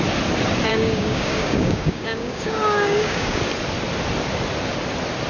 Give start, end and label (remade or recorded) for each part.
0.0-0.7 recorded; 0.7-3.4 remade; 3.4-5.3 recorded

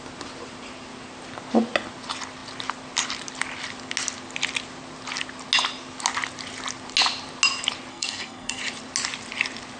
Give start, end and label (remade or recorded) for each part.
0.0-7.9 recorded; 7.9-8.6 remade; 8.6-9.8 recorded

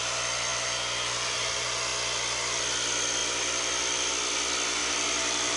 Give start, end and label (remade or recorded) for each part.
0.0-0.5 recorded; 0.5-1.5 remade; 1.5-3.2 recorded; 3.2-4.1 remade; 4.1-4.8 recorded; 4.8-5.6 remade